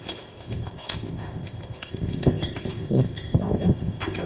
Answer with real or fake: fake